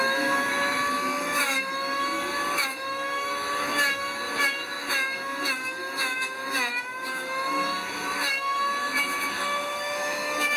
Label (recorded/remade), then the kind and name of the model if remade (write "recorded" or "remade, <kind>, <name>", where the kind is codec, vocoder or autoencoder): remade, autoencoder, DAC-VAE